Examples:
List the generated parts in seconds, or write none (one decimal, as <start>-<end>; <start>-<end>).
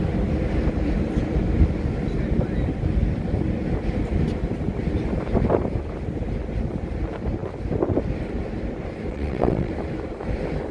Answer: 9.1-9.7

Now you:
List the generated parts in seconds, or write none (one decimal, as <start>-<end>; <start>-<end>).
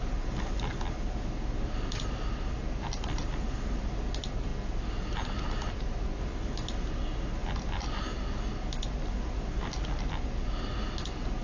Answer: none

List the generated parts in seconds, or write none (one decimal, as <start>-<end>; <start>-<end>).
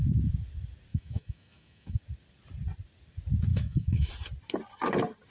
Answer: 0.9-2.0; 3.5-4.1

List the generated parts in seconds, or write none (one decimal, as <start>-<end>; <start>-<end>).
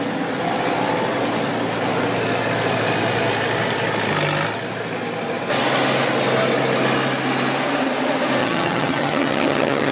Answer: 8.4-9.9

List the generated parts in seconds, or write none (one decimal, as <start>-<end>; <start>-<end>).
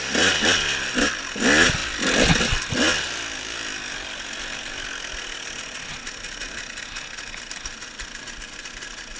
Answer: none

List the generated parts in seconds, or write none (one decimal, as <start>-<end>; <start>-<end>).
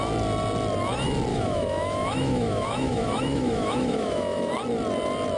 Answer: 1.3-4.5